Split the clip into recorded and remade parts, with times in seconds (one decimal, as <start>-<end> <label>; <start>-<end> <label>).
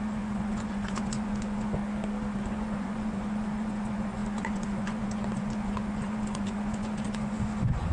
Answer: 0.0-1.8 remade; 1.8-2.5 recorded; 2.5-7.9 remade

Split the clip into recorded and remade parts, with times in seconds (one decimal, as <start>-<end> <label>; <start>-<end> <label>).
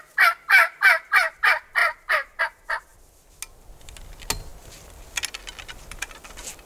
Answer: 0.0-1.8 recorded; 1.8-2.4 remade; 2.4-6.7 recorded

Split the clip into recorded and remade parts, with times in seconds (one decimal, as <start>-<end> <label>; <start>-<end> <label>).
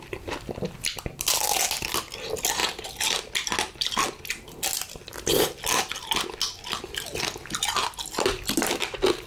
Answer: 0.0-9.3 recorded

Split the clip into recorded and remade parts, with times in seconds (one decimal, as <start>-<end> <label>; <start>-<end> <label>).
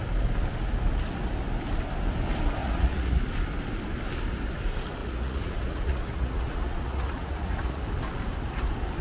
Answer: 0.0-2.6 recorded; 2.6-3.2 remade; 3.2-5.0 recorded; 5.0-7.8 remade; 7.8-9.0 recorded